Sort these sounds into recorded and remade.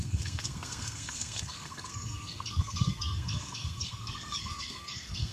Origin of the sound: remade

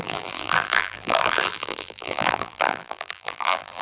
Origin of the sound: remade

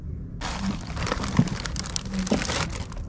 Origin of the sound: recorded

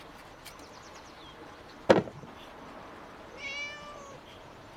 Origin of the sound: recorded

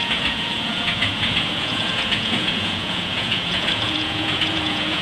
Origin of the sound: remade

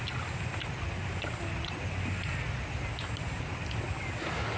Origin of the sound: recorded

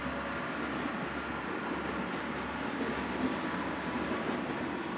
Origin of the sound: recorded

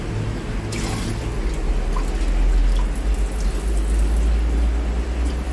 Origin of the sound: recorded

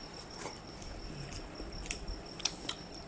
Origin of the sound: recorded